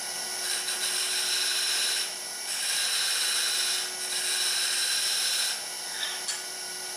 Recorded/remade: recorded